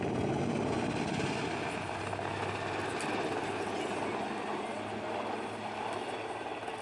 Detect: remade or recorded recorded